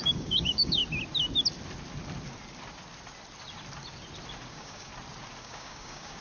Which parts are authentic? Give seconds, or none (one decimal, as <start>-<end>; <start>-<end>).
0.8-4.5; 4.9-5.4